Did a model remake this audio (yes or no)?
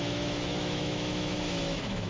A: yes